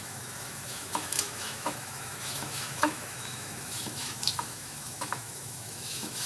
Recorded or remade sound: remade